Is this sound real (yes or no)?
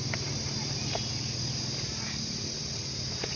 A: yes